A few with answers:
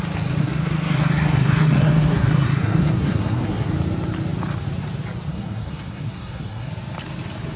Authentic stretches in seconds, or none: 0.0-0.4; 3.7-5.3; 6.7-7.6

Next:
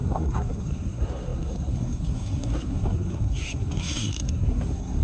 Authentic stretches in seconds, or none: none

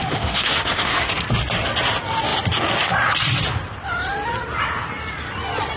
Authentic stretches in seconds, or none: 1.1-5.8

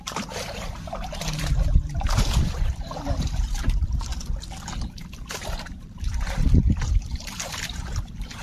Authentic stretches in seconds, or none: 4.1-5.3

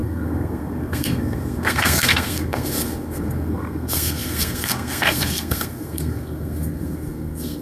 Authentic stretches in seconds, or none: none